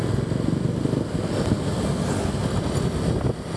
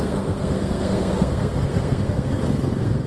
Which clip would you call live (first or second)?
first